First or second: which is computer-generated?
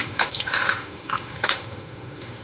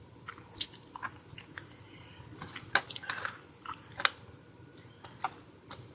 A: first